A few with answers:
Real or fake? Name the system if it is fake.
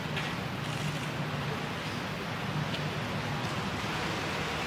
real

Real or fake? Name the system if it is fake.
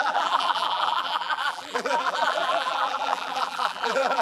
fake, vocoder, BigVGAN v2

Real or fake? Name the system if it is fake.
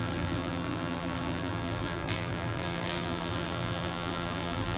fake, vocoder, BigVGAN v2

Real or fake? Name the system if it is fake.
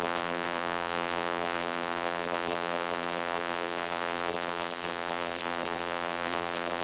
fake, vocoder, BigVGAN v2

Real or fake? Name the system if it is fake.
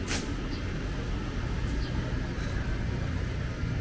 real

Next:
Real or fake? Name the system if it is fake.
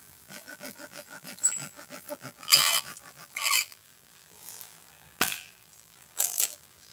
fake, vocoder, BigVGAN v2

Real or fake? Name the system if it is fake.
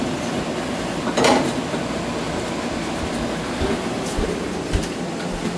fake, vocoder, BigVGAN v2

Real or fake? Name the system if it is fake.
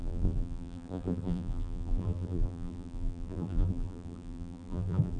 fake, vocoder, BigVGAN v2